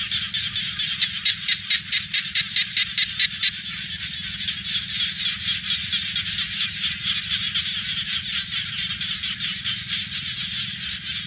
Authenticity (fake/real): real